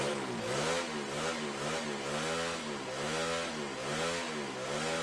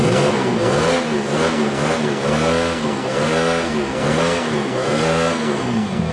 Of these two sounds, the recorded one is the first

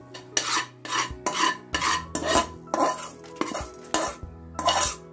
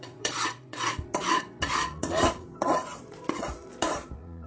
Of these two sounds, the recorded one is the first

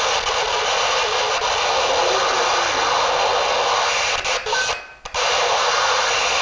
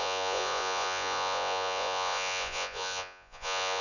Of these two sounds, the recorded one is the first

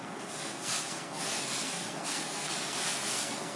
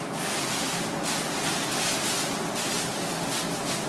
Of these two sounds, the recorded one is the second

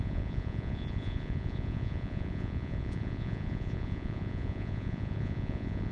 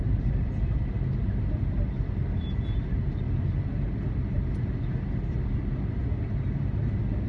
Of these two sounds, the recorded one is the second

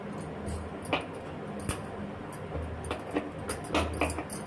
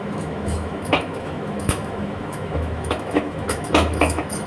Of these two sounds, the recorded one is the first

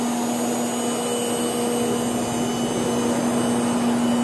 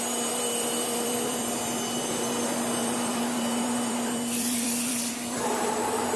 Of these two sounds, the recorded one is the first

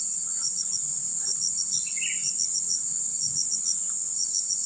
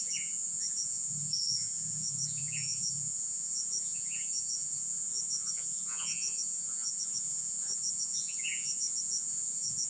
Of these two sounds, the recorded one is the first